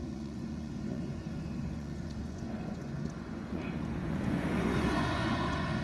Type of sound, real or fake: fake